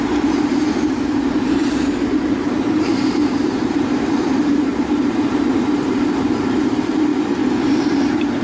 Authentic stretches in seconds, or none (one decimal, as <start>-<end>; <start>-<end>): 7.1-7.9